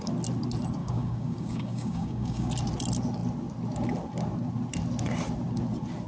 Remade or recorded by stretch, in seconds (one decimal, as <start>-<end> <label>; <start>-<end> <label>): 0.0-0.8 recorded; 0.8-2.5 remade; 2.5-6.1 recorded